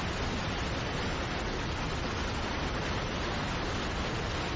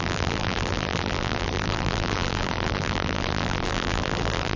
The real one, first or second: first